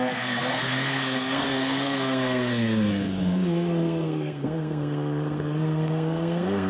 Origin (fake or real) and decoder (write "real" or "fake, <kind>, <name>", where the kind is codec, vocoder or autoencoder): fake, codec, SNAC